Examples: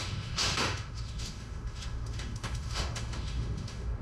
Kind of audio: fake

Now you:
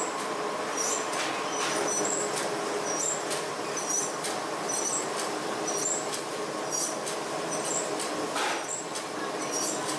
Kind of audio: fake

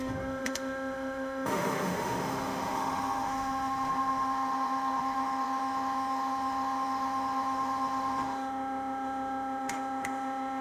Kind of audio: fake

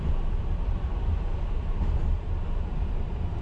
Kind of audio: fake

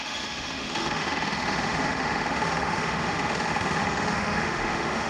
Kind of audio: fake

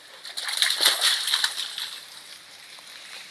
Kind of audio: real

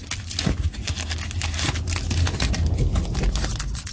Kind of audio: real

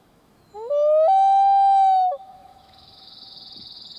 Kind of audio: fake